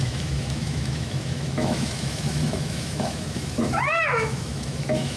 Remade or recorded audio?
remade